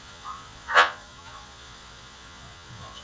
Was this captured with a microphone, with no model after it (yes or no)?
no